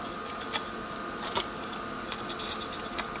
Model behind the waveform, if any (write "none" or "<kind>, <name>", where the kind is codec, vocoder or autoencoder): none